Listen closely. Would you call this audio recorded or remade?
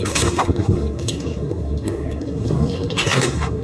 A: remade